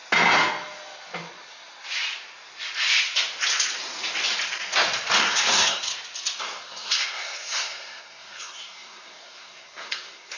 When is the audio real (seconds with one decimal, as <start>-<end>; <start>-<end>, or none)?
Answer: 0.0-5.2; 5.9-6.4